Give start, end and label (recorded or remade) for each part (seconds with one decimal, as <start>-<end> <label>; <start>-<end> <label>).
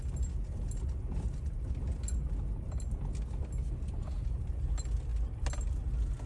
0.0-6.3 recorded